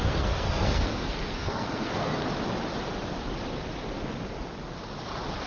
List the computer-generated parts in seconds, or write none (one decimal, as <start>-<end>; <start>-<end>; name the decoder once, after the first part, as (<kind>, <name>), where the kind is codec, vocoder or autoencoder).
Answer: 0.0-2.2 (codec, SNAC)